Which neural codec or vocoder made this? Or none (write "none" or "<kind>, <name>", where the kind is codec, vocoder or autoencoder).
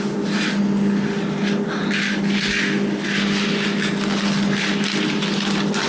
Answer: none